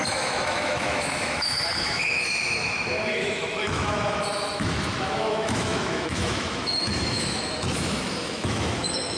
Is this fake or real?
fake